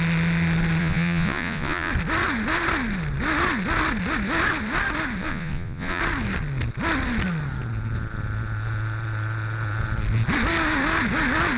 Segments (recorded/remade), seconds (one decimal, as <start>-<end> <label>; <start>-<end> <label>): 0.0-0.8 recorded; 0.8-1.9 remade; 1.9-5.2 recorded; 5.2-6.0 remade; 6.0-11.6 recorded